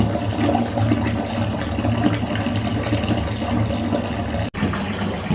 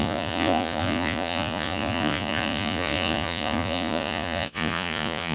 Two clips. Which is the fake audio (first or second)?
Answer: second